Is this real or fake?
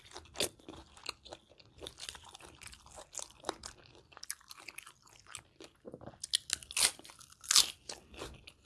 real